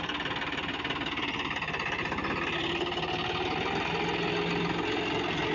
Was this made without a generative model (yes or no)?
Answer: yes